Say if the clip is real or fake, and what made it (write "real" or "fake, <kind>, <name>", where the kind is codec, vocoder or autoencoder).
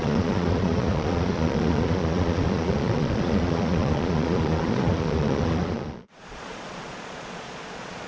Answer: fake, vocoder, Vocos